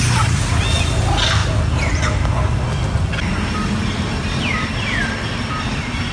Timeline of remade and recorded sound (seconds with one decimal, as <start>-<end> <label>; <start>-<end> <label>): 0.0-6.1 recorded